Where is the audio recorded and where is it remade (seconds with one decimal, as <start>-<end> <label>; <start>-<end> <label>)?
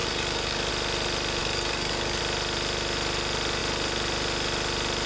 0.0-0.7 remade; 0.7-1.4 recorded; 1.4-2.2 remade; 2.2-5.1 recorded